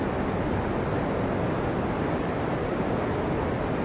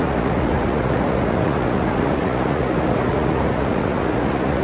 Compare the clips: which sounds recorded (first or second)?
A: first